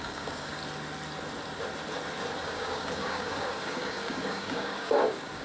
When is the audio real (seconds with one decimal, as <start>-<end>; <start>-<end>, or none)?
0.6-2.4